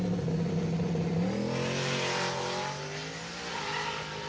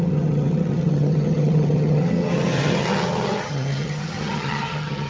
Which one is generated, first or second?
second